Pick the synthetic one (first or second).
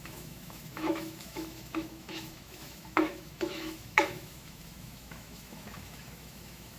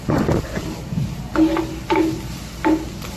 first